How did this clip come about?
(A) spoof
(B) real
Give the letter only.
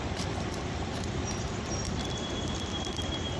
B